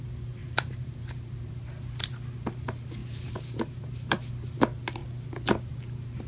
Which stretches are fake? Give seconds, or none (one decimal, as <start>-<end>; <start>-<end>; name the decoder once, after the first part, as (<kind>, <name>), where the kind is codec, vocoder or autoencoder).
0.4-1.5 (vocoder, BigVGAN v2); 3.0-4.3